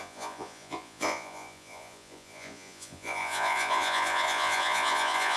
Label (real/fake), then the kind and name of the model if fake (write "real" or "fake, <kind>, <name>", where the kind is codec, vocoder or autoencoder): fake, vocoder, Vocos